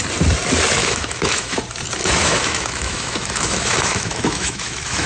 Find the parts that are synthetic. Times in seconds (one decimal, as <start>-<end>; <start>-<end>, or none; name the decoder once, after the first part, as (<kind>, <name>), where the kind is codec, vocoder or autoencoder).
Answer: 0.8-1.6 (autoencoder, DAC-VAE); 2.0-5.1